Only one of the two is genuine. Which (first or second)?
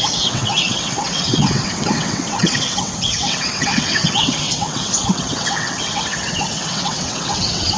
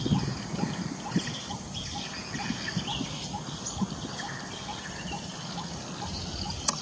second